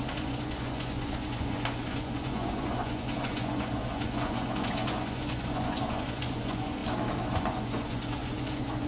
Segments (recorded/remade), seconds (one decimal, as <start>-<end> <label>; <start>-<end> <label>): 0.0-6.8 remade; 6.8-7.3 recorded; 7.3-8.9 remade